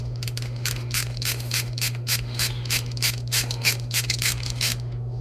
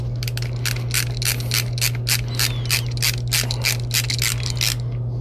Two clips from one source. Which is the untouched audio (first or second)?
second